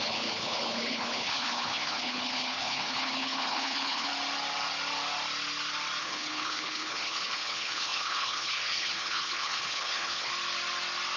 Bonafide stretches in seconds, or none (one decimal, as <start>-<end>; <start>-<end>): 4.1-6.0; 10.3-11.2